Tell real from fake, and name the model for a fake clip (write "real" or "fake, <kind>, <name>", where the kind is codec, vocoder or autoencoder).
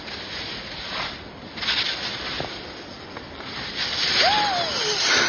real